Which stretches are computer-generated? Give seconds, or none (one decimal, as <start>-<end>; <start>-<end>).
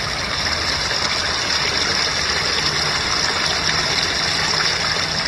none